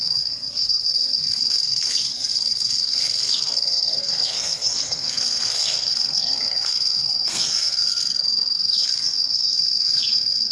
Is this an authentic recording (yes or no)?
no